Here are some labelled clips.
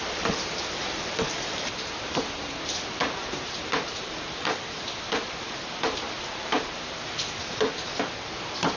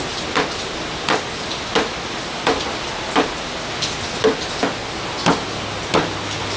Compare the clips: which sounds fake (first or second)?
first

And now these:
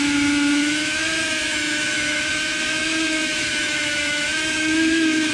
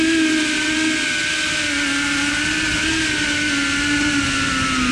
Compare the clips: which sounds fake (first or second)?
first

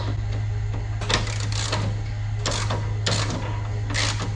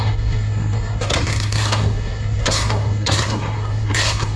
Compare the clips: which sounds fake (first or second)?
second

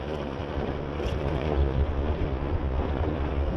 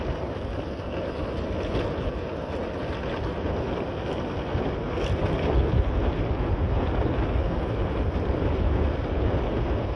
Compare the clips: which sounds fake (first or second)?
first